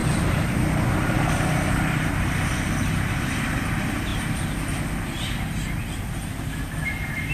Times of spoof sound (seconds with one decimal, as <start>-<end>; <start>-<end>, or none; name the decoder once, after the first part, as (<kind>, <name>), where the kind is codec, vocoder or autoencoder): 0.0-1.1 (vocoder, BigVGAN v2)